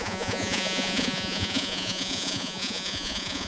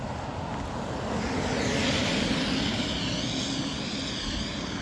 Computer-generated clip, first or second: first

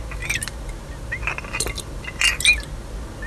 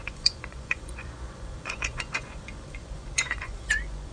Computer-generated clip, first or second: second